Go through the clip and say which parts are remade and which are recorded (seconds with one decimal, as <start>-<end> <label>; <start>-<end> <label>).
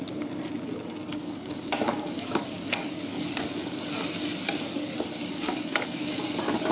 0.0-1.1 recorded; 1.1-3.3 remade; 3.3-5.3 recorded; 5.3-6.2 remade; 6.2-6.7 recorded